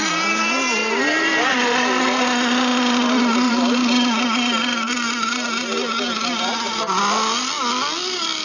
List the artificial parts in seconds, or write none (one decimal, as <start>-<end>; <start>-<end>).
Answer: 2.7-3.5

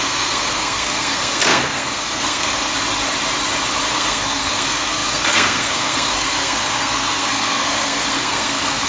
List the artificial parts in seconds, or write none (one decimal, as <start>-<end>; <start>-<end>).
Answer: 0.0-2.7; 3.9-8.9